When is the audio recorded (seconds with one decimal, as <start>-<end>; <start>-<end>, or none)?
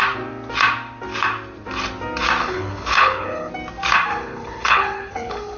0.0-2.4; 3.5-4.1